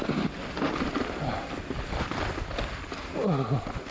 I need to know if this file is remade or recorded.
recorded